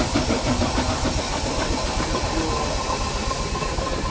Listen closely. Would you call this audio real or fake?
real